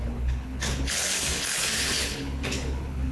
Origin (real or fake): fake